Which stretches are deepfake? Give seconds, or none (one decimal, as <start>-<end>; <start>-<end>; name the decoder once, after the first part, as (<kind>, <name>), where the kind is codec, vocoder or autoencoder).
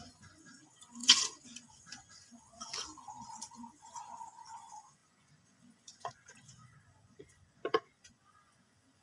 0.0-2.7 (vocoder, Vocos); 3.5-9.0